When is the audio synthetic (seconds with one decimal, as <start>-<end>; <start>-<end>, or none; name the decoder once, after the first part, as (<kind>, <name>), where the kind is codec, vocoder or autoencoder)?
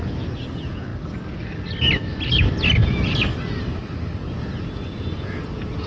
0.0-0.9 (vocoder, Vocos); 4.2-5.9